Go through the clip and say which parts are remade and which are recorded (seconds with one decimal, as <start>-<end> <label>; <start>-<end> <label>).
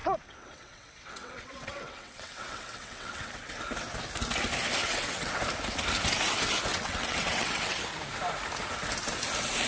0.0-3.3 remade; 3.3-4.8 recorded; 4.8-5.4 remade; 5.4-6.7 recorded; 6.7-7.8 remade; 7.8-9.7 recorded